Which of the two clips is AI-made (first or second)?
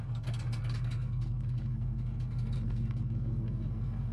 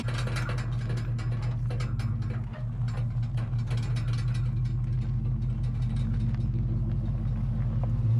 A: first